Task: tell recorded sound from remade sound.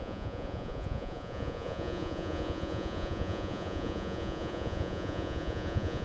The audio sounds remade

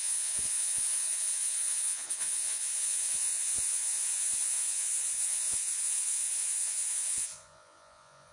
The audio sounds remade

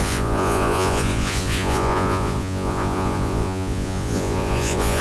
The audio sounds remade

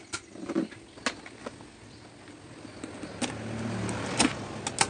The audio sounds recorded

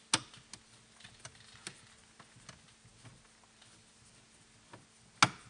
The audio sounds recorded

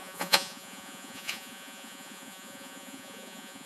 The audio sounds remade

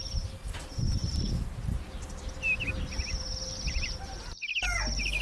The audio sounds recorded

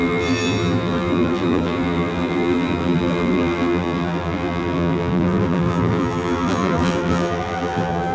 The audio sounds remade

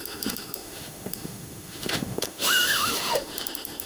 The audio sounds remade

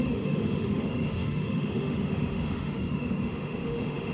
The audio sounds remade